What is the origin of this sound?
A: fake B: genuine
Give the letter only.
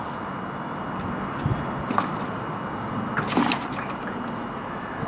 B